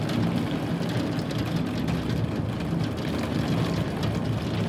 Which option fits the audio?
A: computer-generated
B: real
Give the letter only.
B